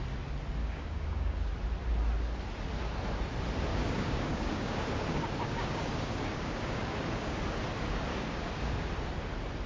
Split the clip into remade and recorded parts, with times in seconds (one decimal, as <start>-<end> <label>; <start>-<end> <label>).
0.0-0.6 recorded; 0.6-1.5 remade; 1.5-3.7 recorded; 3.7-7.4 remade; 7.4-8.1 recorded; 8.1-8.9 remade; 8.9-9.7 recorded